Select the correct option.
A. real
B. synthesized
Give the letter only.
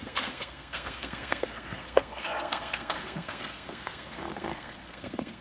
B